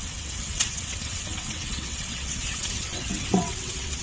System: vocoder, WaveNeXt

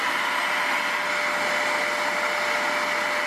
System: none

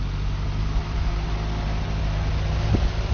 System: none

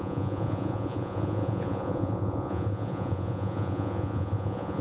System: vocoder, Vocos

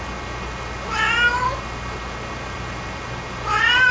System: none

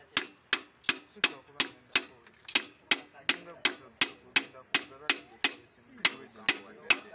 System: none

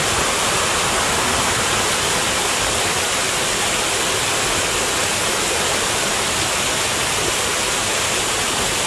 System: none